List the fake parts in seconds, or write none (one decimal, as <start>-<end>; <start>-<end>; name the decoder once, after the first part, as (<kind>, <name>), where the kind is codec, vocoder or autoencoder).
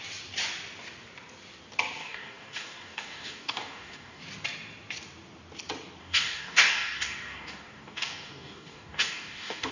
2.0-4.2 (codec, DAC); 6.0-9.7